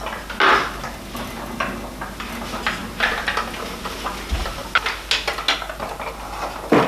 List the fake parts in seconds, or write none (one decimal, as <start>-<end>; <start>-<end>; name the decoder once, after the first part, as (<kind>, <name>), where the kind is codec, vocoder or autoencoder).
none